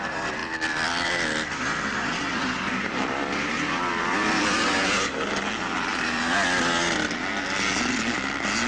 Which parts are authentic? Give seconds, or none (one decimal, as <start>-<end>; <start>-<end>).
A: 0.0-0.4; 4.4-8.7